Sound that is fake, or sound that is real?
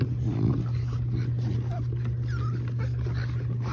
real